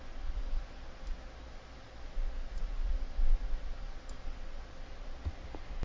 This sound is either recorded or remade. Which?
recorded